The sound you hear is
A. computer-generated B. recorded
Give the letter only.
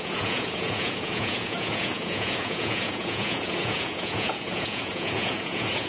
A